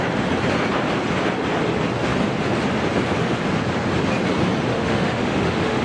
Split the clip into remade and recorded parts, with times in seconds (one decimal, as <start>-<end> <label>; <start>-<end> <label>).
0.0-4.7 recorded; 4.7-5.8 remade